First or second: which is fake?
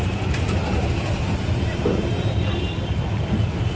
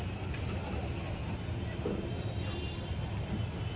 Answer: first